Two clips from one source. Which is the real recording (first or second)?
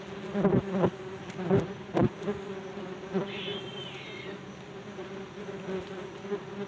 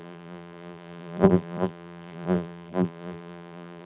first